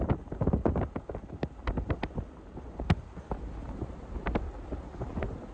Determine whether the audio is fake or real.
real